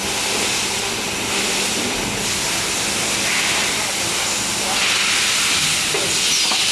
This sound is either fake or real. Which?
real